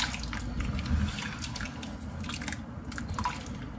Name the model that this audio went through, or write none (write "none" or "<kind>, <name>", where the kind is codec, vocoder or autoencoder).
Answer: none